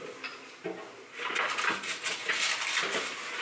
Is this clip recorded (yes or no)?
yes